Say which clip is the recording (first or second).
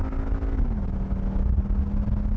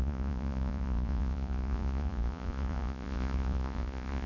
first